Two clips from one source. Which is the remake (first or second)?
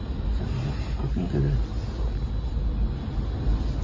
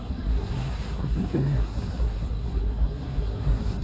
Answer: second